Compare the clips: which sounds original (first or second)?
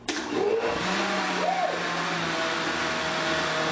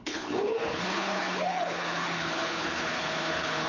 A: first